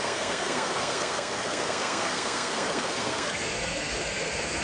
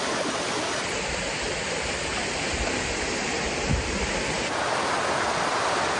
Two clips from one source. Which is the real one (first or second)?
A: second